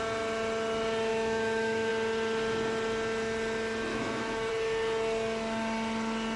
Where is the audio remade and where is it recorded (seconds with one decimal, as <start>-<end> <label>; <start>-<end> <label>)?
0.0-1.1 recorded; 1.1-1.9 remade; 1.9-3.9 recorded; 3.9-4.5 remade; 4.5-6.4 recorded